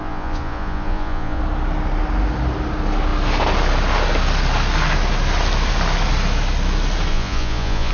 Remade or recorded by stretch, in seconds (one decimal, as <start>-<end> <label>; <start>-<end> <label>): 0.0-1.4 remade; 1.4-7.1 recorded; 7.1-7.9 remade